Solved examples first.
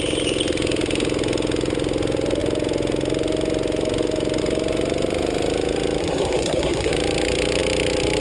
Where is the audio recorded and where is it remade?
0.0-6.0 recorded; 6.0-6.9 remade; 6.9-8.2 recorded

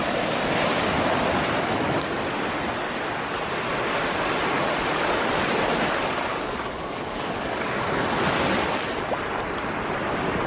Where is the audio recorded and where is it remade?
0.0-6.3 recorded; 6.3-7.7 remade; 7.7-10.5 recorded